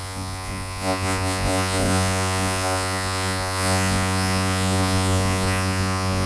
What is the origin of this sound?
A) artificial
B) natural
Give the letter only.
A